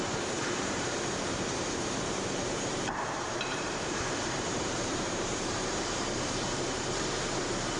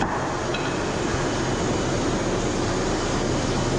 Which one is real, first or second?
second